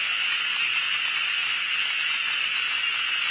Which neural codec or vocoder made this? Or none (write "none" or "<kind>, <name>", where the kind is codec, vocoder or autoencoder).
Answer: none